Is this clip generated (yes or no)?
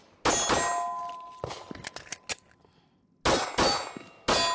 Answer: no